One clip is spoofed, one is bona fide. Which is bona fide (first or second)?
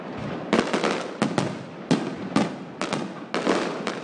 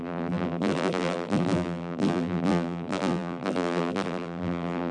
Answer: first